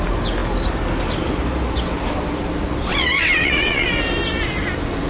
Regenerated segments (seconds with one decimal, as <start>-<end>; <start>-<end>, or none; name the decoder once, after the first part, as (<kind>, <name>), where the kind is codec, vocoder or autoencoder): 2.9-4.0 (vocoder, WaveNeXt)